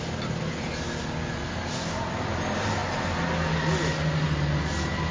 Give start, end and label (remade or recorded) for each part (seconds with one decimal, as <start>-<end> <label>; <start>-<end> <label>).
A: 0.0-5.1 recorded

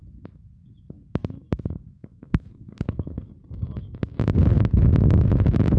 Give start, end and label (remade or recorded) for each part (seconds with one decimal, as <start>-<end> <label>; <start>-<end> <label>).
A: 0.0-1.9 recorded; 1.9-3.3 remade; 3.3-5.8 recorded